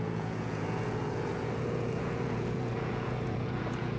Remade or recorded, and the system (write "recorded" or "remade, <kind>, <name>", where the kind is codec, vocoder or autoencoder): remade, vocoder, Vocos